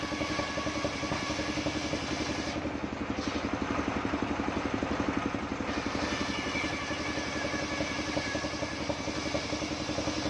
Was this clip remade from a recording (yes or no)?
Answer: no